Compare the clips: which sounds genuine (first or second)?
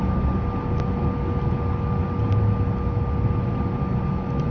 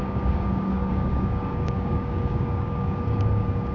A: first